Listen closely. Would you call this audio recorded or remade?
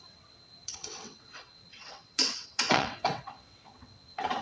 remade